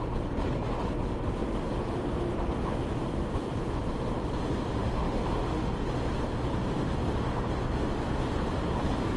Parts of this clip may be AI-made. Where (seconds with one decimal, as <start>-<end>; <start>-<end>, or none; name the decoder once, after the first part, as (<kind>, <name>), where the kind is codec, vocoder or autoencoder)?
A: 4.7-5.7 (autoencoder, DAC-VAE)